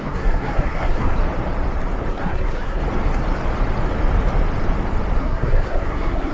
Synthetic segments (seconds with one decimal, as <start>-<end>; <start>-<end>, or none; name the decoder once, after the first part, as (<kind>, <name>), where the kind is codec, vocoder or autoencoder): 0.0-1.2 (codec, SNAC); 2.1-2.8; 5.2-6.3